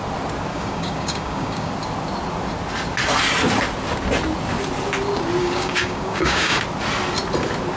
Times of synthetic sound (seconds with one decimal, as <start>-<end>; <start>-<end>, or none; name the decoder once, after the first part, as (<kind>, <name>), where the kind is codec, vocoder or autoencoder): 0.5-1.7 (codec, DAC); 5.4-6.6